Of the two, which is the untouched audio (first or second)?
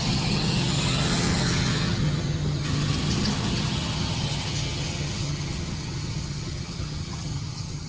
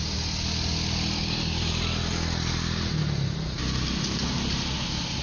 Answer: second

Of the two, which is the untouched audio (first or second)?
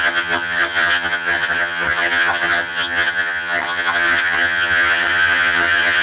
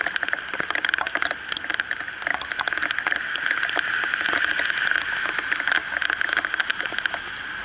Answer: second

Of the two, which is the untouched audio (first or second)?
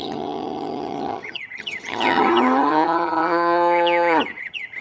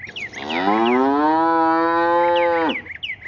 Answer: second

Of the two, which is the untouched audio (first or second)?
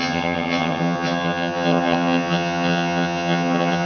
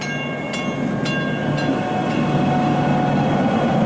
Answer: second